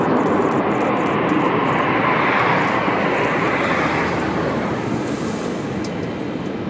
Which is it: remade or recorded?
recorded